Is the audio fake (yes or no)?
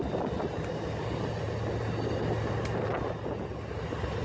no